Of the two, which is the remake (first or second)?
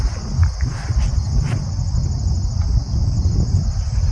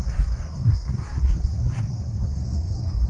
second